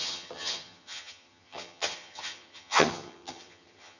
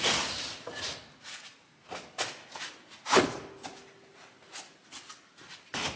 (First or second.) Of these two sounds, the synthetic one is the first